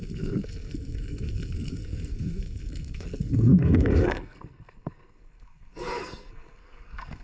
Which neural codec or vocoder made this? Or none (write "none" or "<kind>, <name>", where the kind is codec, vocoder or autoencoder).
codec, SNAC